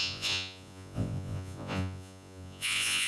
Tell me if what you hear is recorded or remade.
remade